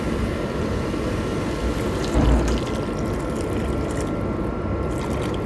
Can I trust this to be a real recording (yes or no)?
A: no